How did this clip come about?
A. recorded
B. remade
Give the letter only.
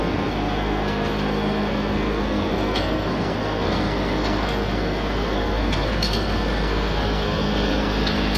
B